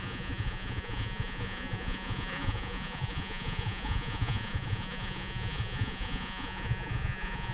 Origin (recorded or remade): remade